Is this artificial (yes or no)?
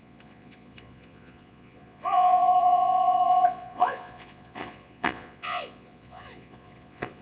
yes